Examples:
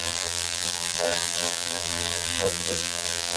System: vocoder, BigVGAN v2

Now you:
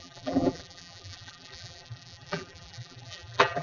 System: vocoder, BigVGAN v2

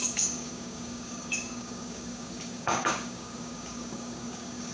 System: codec, DAC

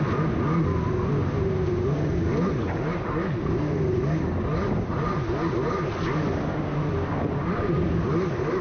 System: none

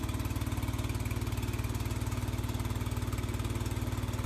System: none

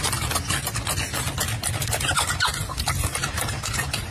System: none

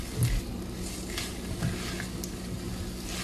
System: none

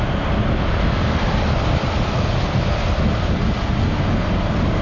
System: none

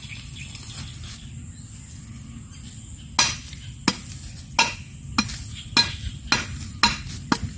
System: none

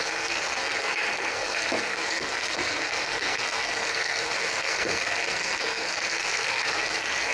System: codec, SNAC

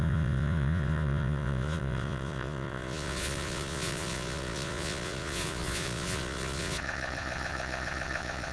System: vocoder, Vocos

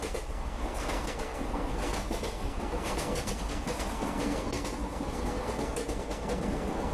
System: codec, SNAC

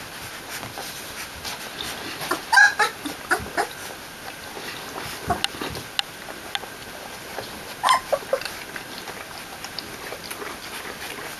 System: none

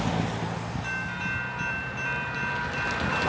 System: none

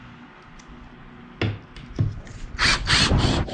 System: none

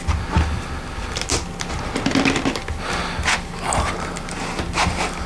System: none